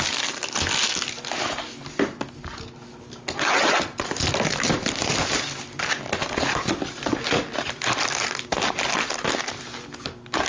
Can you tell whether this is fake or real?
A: real